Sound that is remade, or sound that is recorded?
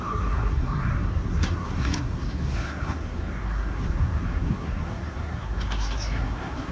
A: remade